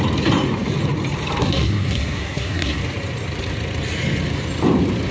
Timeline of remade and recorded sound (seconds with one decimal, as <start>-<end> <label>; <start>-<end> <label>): 0.0-1.4 recorded; 1.4-2.8 remade; 2.8-5.1 recorded